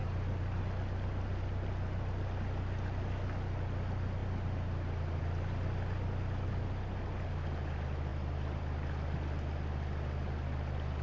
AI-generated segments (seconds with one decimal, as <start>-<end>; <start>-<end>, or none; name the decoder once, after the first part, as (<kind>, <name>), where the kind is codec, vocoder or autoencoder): 0.0-0.6 (vocoder, BigVGAN v2)